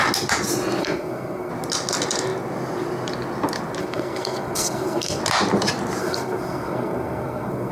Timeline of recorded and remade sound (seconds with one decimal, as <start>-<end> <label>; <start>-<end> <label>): 0.0-0.8 recorded; 0.8-1.5 remade; 1.5-3.8 recorded; 3.8-5.2 remade; 5.2-6.0 recorded; 6.0-7.7 remade

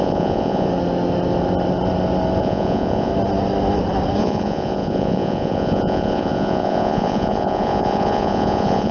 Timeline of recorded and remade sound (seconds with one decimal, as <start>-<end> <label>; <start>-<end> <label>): 0.0-0.7 remade; 0.7-2.4 recorded; 2.4-3.1 remade; 3.1-4.2 recorded; 4.2-8.9 remade

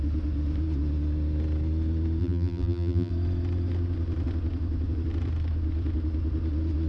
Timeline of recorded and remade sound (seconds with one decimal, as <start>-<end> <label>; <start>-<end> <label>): 0.0-2.2 recorded; 2.2-3.1 remade; 3.1-6.9 recorded

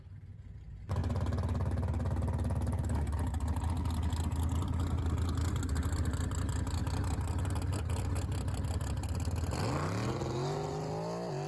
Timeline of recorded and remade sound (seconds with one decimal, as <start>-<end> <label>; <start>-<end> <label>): 0.0-11.5 recorded

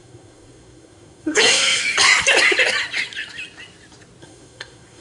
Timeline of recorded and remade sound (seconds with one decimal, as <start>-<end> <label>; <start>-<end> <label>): 0.0-1.8 remade; 1.8-4.2 recorded; 4.2-5.0 remade

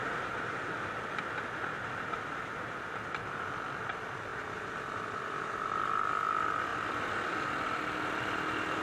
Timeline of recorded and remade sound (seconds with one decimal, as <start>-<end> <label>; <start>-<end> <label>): 0.0-8.8 recorded

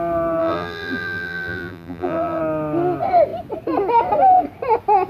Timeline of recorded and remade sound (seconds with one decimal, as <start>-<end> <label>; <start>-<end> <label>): 0.0-0.4 recorded; 0.4-2.4 remade; 2.4-5.1 recorded